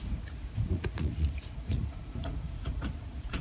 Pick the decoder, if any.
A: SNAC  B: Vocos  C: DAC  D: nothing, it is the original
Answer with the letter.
B